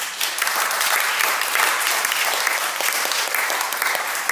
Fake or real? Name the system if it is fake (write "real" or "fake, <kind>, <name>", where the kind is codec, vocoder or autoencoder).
real